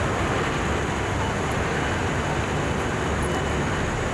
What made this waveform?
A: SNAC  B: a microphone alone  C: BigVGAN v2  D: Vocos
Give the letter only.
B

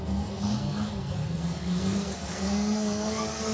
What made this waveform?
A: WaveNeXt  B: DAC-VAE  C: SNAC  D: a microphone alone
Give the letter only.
C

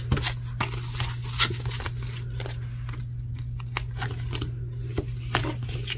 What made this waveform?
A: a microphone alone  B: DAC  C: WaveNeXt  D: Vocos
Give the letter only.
A